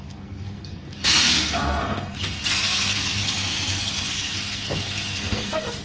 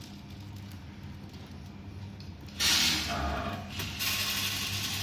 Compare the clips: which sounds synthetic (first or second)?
first